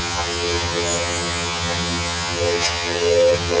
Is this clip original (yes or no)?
no